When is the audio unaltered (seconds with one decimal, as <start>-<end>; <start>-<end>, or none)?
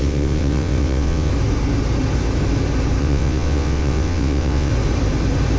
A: 1.3-3.0; 4.7-5.6